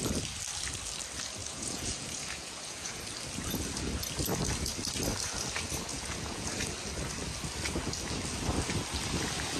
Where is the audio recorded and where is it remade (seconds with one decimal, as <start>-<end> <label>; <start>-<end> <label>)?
0.0-1.4 recorded; 1.4-3.0 remade; 3.0-5.9 recorded; 5.9-6.5 remade; 6.5-9.6 recorded